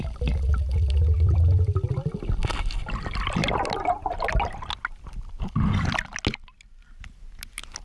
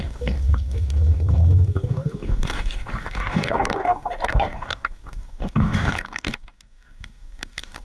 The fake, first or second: second